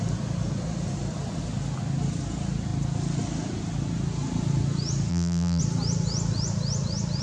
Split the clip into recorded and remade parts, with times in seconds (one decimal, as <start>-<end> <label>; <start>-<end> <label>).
0.0-5.1 recorded; 5.1-5.6 remade; 5.6-7.2 recorded